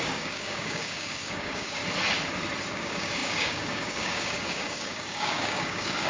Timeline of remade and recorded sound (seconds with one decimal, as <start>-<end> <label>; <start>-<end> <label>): 0.0-1.8 remade; 1.8-2.7 recorded; 2.7-6.1 remade